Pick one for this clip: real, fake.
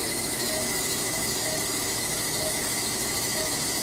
fake